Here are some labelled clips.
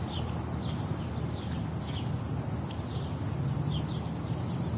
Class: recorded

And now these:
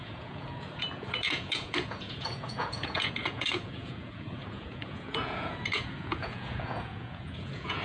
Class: remade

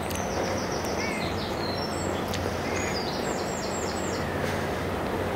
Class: remade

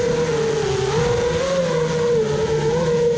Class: recorded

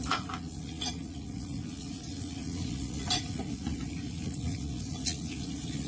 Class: remade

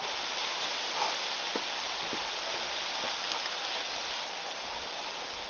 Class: recorded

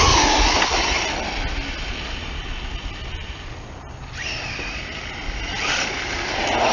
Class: recorded